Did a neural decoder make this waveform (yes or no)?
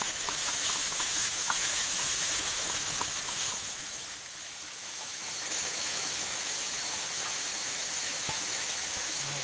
yes